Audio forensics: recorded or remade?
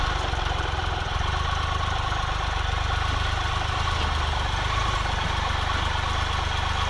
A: recorded